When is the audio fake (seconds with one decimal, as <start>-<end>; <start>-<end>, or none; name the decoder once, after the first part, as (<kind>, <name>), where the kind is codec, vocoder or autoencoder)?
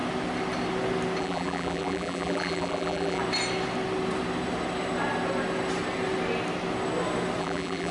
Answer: 1.2-3.2 (vocoder, BigVGAN v2); 7.4-7.9